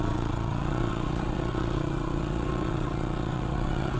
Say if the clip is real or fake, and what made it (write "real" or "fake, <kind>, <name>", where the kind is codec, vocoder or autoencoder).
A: fake, vocoder, WaveNeXt